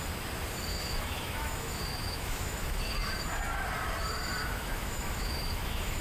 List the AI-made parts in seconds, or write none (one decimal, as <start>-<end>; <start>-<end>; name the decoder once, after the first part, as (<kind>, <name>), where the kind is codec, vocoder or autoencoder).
0.7-2.8 (autoencoder, DAC-VAE); 4.4-6.0

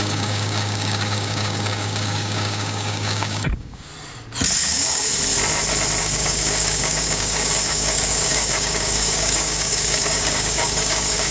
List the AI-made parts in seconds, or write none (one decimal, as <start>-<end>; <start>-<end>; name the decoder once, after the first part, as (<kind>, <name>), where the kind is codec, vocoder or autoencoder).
0.0-3.9 (codec, DAC); 4.6-5.1; 6.0-11.3